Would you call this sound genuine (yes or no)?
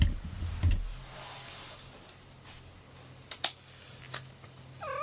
yes